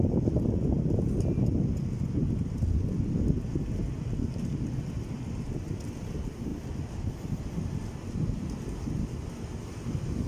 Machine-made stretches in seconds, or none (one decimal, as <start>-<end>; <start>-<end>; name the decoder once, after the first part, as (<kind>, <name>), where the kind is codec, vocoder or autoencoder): none